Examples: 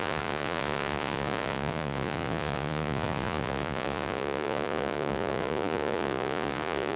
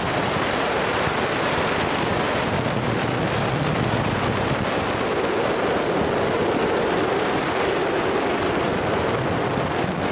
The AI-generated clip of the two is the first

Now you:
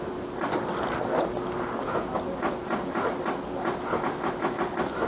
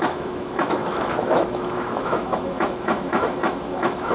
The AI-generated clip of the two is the second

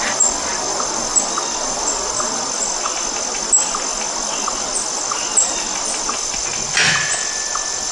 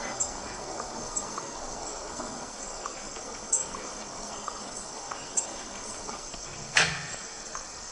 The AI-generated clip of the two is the second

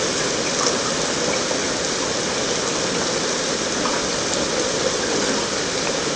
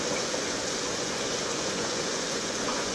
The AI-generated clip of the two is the second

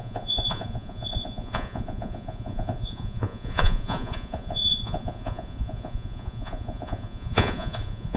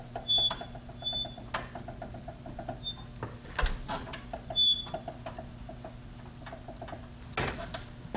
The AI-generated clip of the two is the first